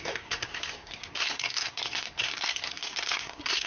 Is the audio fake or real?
fake